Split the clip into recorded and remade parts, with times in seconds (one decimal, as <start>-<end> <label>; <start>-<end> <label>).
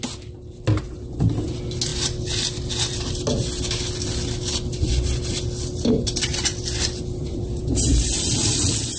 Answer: 0.0-7.2 recorded; 7.2-7.7 remade; 7.7-9.0 recorded